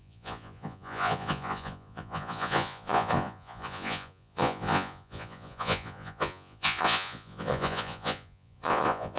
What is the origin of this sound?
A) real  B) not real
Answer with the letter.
B